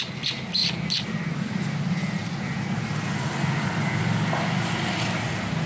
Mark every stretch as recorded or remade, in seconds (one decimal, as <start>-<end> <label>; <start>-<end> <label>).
0.0-5.7 recorded